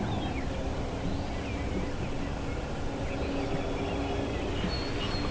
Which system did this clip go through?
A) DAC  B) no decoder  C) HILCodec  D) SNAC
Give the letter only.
B